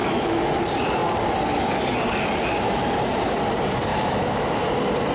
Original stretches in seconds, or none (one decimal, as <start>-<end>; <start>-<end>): 0.6-3.9; 4.6-5.1